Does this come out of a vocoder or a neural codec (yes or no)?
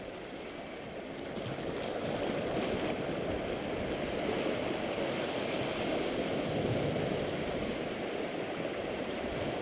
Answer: no